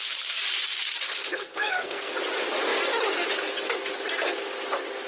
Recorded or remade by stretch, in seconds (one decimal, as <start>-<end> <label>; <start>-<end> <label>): 0.0-1.3 recorded; 1.3-2.1 remade; 2.1-5.1 recorded